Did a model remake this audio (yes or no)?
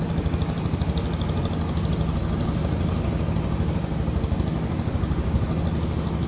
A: no